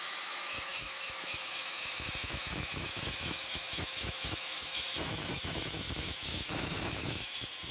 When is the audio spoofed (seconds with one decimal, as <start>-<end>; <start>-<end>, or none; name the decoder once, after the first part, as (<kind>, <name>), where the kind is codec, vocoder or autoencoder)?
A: 0.0-7.7 (autoencoder, DAC-VAE)